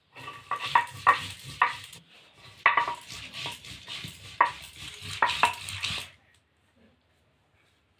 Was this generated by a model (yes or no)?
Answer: no